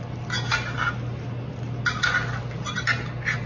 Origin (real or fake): real